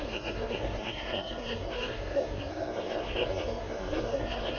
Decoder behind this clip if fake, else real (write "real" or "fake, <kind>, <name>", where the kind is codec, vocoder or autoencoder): fake, codec, SNAC